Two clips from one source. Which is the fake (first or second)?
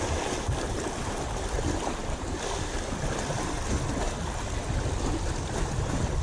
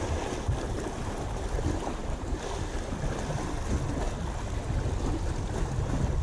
first